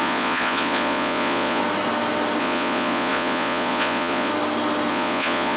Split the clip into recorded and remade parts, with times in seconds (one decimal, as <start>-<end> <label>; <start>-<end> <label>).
0.0-1.6 remade; 1.6-2.4 recorded; 2.4-4.3 remade; 4.3-4.9 recorded; 4.9-5.6 remade